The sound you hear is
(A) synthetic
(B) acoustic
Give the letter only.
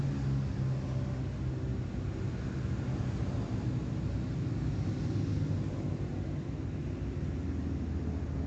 B